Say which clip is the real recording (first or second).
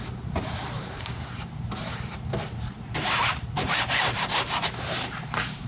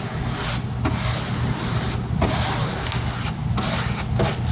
second